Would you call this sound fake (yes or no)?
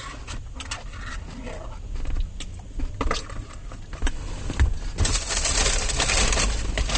no